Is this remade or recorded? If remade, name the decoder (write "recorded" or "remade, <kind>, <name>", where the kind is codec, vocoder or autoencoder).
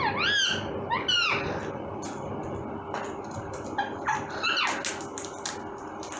recorded